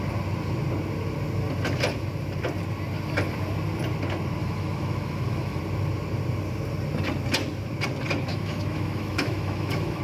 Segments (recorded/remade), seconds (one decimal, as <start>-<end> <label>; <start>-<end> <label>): 0.0-4.4 recorded; 4.4-5.6 remade; 5.6-8.3 recorded; 8.3-10.0 remade

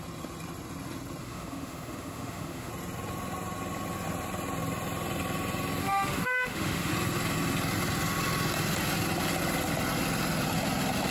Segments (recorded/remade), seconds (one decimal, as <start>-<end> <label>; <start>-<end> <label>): 0.0-1.2 recorded; 1.2-2.7 remade; 2.7-5.8 recorded; 5.8-6.9 remade; 6.9-11.1 recorded

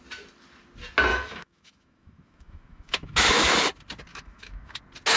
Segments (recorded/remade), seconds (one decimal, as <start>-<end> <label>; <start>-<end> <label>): 0.0-1.1 recorded; 1.1-3.5 remade; 3.5-4.1 recorded; 4.1-4.8 remade; 4.8-5.2 recorded

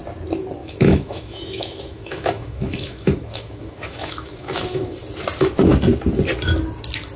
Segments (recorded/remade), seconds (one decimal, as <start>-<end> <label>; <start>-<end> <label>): 0.0-0.6 recorded; 0.6-4.9 remade; 4.9-7.2 recorded